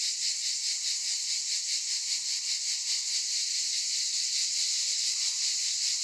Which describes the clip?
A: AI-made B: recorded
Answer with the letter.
B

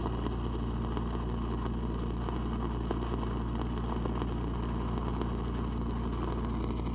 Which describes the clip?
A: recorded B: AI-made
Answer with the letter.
A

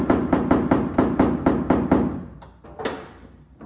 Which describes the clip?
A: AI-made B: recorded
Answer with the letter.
B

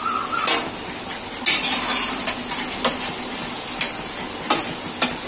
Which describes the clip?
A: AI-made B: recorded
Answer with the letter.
B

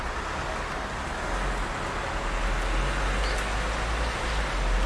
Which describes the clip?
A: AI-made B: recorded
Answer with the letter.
B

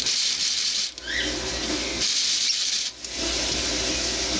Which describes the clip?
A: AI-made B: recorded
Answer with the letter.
B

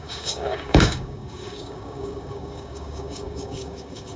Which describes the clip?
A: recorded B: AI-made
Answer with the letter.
B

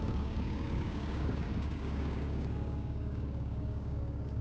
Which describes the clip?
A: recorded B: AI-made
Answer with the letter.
B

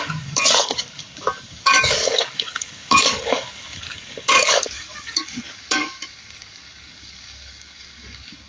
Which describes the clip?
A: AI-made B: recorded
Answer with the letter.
A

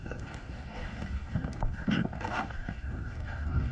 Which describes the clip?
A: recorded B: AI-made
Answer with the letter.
B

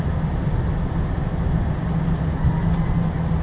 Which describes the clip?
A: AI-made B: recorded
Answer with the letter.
B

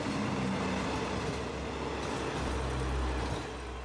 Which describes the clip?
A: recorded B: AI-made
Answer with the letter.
A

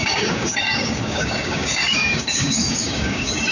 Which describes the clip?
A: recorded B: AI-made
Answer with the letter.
B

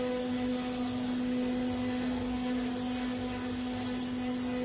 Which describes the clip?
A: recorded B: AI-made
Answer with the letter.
A